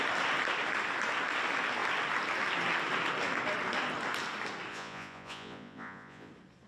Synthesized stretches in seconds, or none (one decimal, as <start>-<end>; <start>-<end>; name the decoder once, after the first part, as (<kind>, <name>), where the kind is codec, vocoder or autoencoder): 4.7-6.3 (vocoder, Vocos)